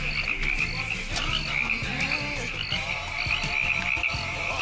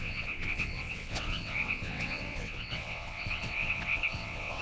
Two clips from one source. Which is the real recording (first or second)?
first